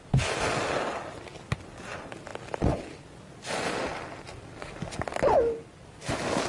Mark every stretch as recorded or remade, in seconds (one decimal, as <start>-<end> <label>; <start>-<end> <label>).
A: 0.0-6.5 recorded